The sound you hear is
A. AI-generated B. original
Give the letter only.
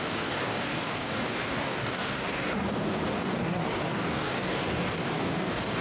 A